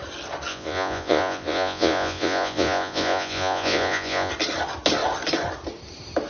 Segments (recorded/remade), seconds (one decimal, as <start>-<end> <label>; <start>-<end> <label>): 0.0-0.5 recorded; 0.5-4.3 remade; 4.3-6.3 recorded